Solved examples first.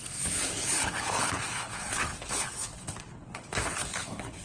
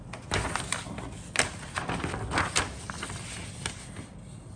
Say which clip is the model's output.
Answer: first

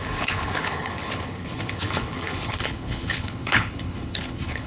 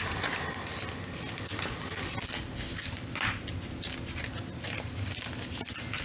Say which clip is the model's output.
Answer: first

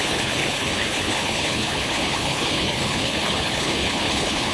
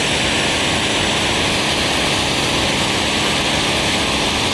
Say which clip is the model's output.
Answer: first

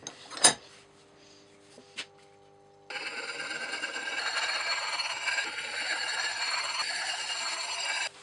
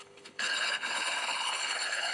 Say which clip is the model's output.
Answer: second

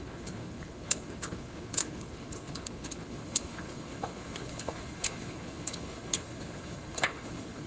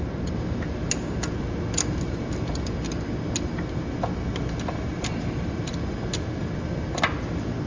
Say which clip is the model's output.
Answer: first